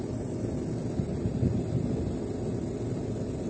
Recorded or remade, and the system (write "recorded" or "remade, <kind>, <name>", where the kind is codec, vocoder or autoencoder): recorded